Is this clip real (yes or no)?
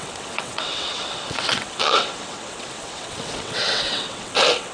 no